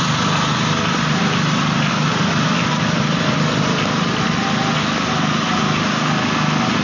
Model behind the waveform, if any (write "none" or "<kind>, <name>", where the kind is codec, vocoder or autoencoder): none